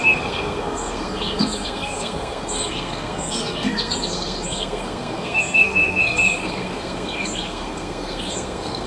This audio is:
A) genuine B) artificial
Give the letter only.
B